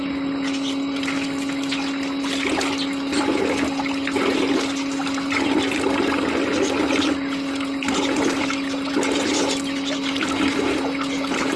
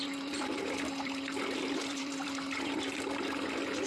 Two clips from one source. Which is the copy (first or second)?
second